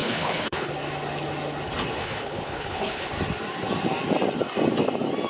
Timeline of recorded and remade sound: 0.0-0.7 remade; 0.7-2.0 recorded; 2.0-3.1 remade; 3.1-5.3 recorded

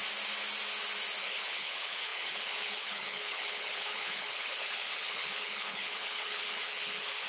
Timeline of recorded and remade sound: 0.0-1.2 recorded; 1.2-7.3 remade

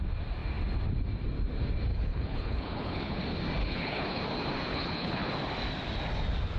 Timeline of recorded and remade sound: 0.0-1.9 recorded; 1.9-3.2 remade; 3.2-3.6 recorded; 3.6-4.2 remade; 4.2-4.7 recorded; 4.7-5.3 remade; 5.3-6.6 recorded

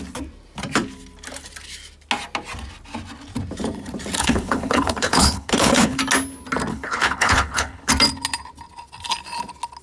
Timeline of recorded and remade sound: 0.0-4.2 recorded; 4.2-6.0 remade; 6.0-6.7 recorded; 6.7-7.9 remade; 7.9-9.8 recorded